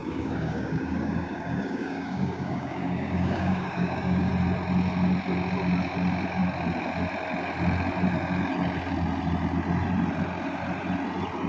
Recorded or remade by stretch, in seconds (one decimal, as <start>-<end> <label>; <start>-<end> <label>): 0.0-4.3 remade; 4.3-11.5 recorded